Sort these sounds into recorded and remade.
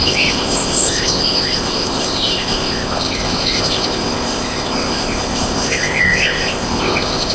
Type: remade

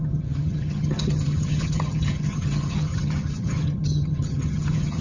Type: remade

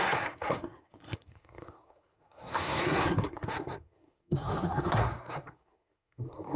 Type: remade